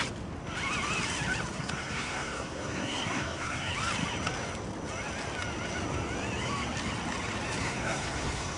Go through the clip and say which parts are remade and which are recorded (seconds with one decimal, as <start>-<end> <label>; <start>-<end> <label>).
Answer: 0.0-1.6 recorded; 1.6-3.7 remade; 3.7-7.6 recorded; 7.6-8.6 remade